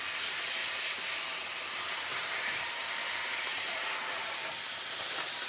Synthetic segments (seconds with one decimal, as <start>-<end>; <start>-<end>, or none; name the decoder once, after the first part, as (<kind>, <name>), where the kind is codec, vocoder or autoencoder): 2.1-5.5 (vocoder, BigVGAN v2)